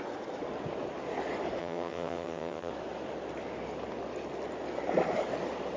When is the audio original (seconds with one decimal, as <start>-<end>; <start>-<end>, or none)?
0.0-1.6; 2.7-5.8